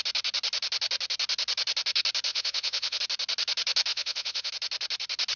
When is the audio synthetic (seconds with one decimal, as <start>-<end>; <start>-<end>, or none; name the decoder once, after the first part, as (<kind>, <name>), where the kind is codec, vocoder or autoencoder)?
2.3-3.0 (vocoder, Vocos); 3.9-4.5